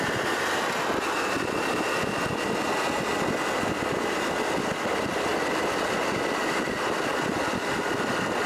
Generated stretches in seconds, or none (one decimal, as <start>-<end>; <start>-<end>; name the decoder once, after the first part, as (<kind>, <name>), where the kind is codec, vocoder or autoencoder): 5.3-6.3 (vocoder, BigVGAN v2); 7.1-8.5